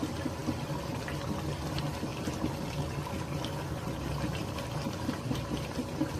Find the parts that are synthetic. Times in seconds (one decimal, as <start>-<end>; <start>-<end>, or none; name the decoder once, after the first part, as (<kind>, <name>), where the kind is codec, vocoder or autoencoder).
0.0-0.4 (vocoder, BigVGAN v2); 1.5-2.1; 4.0-6.2